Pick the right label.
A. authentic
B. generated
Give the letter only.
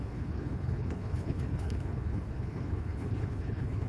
B